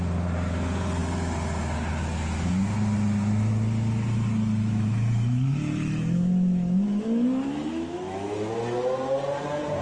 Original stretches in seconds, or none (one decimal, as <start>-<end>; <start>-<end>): 0.0-4.6; 8.5-9.8